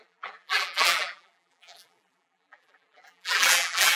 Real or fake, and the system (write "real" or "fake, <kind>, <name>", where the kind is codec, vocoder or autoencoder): fake, vocoder, BigVGAN v2